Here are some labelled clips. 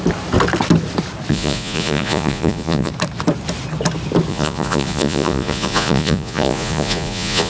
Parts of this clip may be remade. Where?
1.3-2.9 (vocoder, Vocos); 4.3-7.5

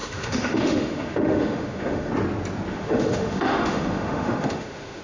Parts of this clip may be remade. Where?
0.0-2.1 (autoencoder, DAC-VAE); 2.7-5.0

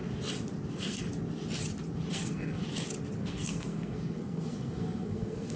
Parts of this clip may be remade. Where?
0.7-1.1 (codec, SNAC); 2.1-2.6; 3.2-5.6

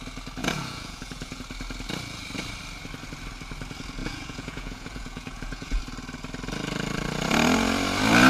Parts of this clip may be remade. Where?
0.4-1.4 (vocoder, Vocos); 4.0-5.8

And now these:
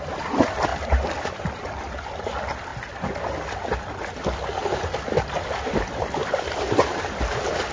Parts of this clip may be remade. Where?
0.0-0.7 (vocoder, BigVGAN v2); 1.3-2.7; 4.8-7.7